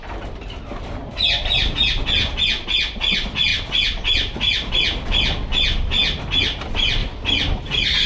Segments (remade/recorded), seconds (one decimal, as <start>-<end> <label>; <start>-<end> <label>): 0.0-8.1 recorded